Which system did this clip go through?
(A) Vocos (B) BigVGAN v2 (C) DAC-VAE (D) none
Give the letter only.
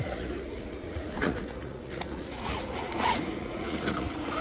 A